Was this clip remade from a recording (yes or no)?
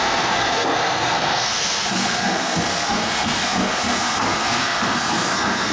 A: yes